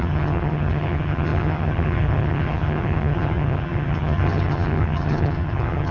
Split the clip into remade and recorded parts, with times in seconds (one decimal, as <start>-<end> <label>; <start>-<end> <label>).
0.0-5.9 remade